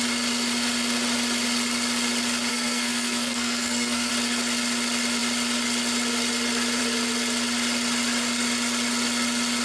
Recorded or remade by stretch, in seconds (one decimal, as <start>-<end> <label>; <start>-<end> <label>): 0.0-2.5 recorded; 2.5-4.1 remade; 4.1-9.6 recorded